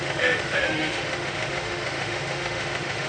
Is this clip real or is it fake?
fake